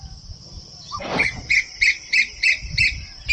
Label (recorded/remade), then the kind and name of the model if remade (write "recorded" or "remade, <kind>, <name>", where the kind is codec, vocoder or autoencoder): recorded